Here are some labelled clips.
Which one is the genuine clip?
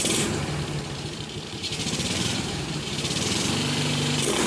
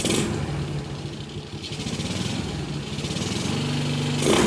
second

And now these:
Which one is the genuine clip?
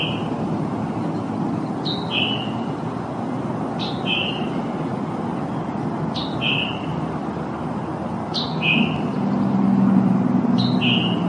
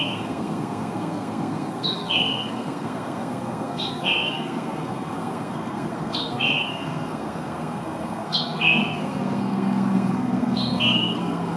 first